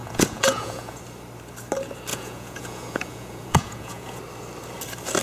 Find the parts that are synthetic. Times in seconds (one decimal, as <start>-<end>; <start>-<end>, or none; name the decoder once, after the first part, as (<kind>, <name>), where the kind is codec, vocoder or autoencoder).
0.0-1.0 (vocoder, Vocos); 2.1-4.2